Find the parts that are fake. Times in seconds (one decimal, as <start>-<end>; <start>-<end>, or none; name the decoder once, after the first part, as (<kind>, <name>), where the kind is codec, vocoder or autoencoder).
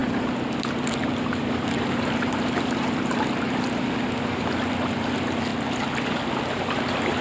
none